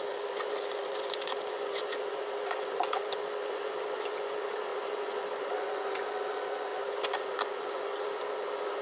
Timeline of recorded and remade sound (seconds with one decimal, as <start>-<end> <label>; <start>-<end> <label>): 0.0-8.8 remade